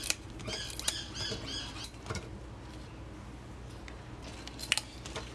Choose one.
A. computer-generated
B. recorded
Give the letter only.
B